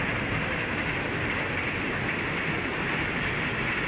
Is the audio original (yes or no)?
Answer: yes